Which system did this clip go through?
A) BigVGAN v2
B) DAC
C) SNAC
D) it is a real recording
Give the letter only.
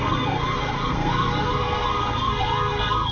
C